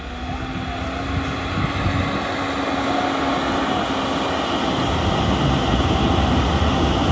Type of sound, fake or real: real